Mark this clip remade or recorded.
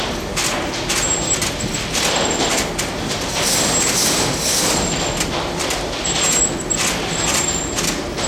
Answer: recorded